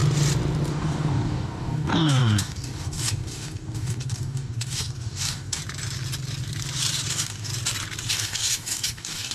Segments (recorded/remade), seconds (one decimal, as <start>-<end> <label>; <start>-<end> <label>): 0.0-0.7 recorded; 0.7-5.6 remade; 5.6-7.1 recorded; 7.1-7.5 remade; 7.5-8.1 recorded; 8.1-9.3 remade